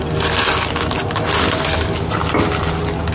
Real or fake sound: real